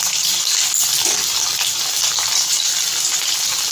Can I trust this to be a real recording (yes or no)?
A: no